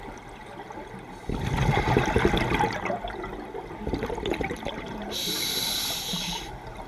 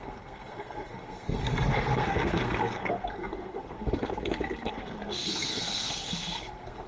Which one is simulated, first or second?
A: second